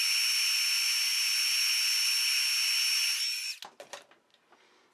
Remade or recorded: recorded